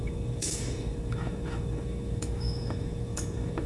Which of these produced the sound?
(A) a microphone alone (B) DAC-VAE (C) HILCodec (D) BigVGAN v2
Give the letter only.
B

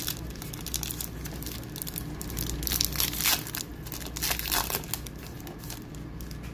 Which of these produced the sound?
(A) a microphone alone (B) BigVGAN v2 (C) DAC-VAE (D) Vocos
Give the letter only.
A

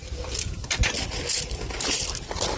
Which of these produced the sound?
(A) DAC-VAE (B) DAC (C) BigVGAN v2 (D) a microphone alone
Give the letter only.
D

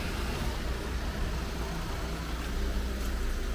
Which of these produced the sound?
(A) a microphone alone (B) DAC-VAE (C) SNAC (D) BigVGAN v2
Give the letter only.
A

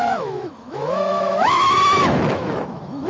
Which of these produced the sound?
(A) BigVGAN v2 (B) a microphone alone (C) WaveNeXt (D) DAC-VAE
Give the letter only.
D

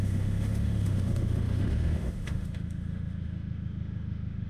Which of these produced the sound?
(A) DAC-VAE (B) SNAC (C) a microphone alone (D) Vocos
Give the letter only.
A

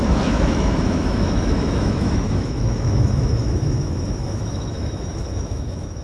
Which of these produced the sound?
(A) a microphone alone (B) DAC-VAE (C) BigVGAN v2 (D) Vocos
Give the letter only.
B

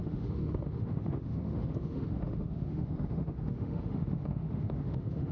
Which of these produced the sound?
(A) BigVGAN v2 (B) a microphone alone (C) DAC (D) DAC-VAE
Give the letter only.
D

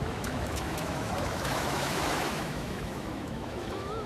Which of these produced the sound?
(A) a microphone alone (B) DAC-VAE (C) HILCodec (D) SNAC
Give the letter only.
B